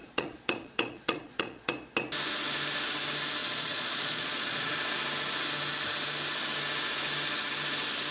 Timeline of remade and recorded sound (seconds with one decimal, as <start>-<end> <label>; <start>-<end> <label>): 0.0-1.7 remade; 1.7-3.4 recorded; 3.4-4.7 remade; 4.7-8.1 recorded